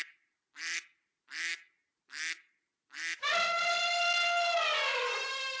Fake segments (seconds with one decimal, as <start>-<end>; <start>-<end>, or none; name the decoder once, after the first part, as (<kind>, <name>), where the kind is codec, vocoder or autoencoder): 0.0-1.5 (vocoder, BigVGAN v2); 4.9-5.6